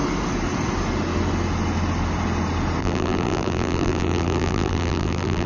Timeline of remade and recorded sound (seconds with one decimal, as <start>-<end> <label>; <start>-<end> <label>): 0.0-2.8 recorded; 2.8-5.5 remade